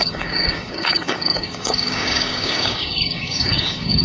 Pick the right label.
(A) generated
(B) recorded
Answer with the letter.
A